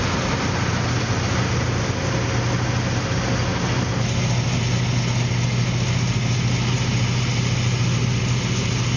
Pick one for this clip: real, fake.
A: real